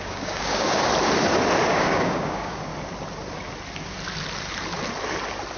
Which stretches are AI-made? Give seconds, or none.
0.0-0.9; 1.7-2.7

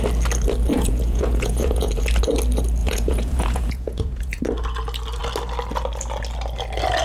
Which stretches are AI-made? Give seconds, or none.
0.7-1.9; 2.8-4.4

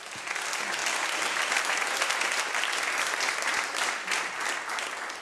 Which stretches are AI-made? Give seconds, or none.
none

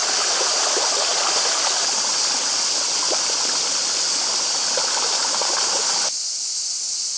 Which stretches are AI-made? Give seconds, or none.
none

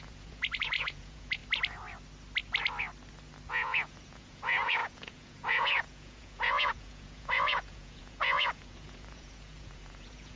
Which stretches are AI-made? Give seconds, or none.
0.0-1.4; 3.5-10.4

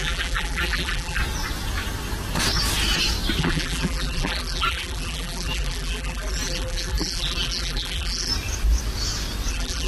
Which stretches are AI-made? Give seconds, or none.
0.0-1.2; 3.4-8.3; 9.5-9.9

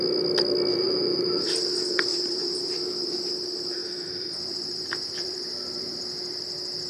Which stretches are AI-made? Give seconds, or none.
0.7-1.5; 2.1-2.9; 3.8-6.0